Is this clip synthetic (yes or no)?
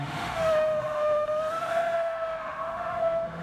yes